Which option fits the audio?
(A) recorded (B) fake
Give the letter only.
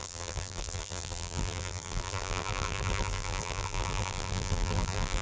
B